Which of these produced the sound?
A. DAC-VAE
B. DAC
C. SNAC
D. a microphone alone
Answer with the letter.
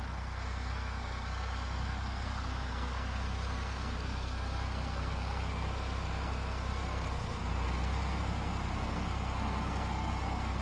C